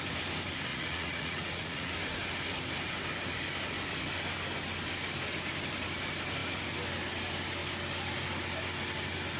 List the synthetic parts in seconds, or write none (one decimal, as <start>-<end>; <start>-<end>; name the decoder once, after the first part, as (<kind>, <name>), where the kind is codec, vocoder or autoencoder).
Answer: 0.7-1.9 (vocoder, Vocos)